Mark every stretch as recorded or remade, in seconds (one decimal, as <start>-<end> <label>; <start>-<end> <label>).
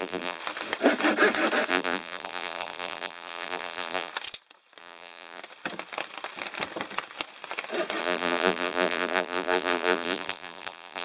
0.0-0.4 remade; 0.4-1.7 recorded; 1.7-4.1 remade; 4.1-4.8 recorded; 4.8-5.4 remade; 5.4-8.0 recorded; 8.0-11.0 remade